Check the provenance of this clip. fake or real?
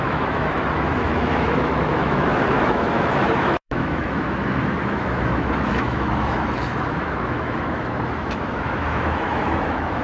fake